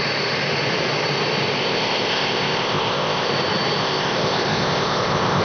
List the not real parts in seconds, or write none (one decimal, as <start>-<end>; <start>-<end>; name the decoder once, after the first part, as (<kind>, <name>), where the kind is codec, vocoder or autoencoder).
1.6-3.3 (codec, ZipCodec); 3.8-5.4